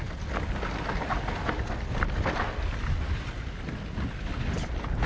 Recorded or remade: recorded